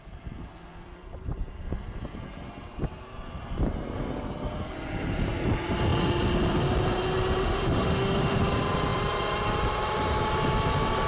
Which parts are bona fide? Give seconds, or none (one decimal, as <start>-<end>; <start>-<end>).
0.0-7.4; 8.4-11.1